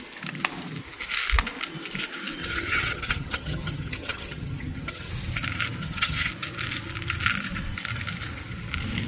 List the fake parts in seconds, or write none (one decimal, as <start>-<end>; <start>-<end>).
2.4-5.1; 5.8-6.3